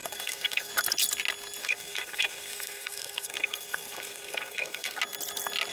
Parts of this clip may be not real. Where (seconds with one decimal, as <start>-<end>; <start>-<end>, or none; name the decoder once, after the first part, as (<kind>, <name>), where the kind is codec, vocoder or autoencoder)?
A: 0.0-0.7 (codec, SNAC); 1.6-5.0

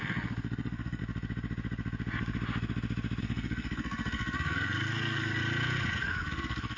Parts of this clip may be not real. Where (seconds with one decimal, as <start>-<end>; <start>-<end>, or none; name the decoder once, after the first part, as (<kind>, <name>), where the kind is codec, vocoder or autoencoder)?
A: 0.0-1.0 (codec, SNAC); 3.2-5.4; 6.0-6.8

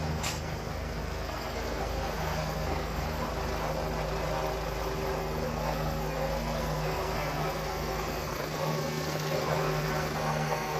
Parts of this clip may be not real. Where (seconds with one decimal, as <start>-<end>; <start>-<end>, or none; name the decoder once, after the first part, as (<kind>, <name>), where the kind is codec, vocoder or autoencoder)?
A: 0.0-3.3 (codec, SNAC); 5.2-10.8

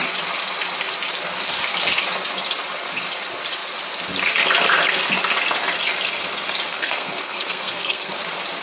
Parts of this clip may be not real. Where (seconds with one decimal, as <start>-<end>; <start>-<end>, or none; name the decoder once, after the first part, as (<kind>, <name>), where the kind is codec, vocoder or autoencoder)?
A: 6.7-8.1 (codec, SNAC)

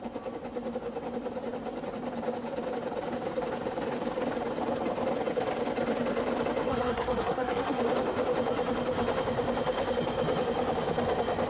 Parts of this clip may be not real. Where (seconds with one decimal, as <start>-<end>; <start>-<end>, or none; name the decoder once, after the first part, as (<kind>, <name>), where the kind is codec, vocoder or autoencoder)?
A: 6.7-7.8 (codec, SNAC)

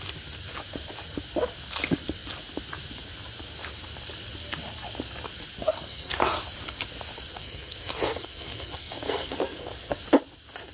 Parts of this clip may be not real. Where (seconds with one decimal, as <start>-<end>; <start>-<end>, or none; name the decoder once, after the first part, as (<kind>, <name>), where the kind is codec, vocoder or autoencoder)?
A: 5.6-6.3 (codec, SNAC); 7.3-10.0

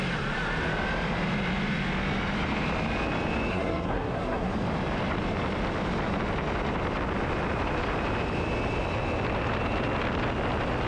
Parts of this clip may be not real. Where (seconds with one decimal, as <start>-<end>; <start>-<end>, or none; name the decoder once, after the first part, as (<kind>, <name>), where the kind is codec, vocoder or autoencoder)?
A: 3.5-4.5 (codec, SNAC)

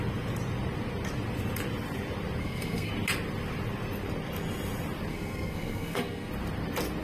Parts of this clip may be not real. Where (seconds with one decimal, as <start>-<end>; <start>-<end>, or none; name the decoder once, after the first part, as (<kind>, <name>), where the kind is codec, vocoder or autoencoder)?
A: 2.4-2.9 (codec, SNAC); 5.1-6.3